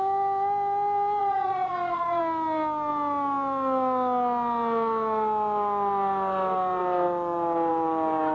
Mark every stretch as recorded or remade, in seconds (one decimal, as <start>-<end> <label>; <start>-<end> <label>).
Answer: 0.0-1.2 recorded; 1.2-2.2 remade; 2.2-8.3 recorded